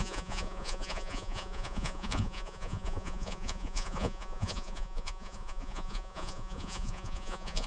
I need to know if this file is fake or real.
fake